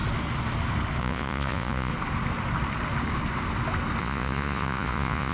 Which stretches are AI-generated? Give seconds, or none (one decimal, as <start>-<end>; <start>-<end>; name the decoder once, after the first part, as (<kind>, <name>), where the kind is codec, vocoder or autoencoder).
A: 1.0-1.9 (vocoder, Vocos); 4.0-5.3